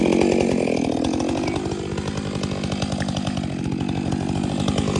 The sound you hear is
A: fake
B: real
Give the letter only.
B